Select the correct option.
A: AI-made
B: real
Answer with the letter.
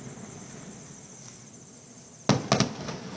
B